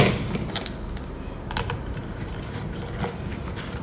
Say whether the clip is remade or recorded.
recorded